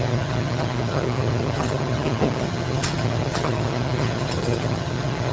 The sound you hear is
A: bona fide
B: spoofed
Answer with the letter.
B